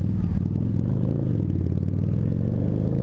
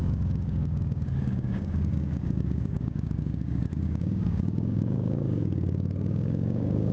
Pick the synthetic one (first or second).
second